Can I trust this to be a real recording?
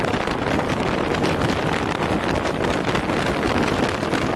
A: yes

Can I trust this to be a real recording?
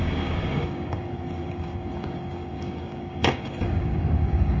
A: no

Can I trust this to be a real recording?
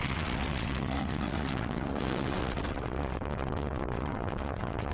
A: no